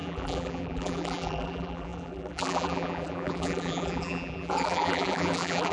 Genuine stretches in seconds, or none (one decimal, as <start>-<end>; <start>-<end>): none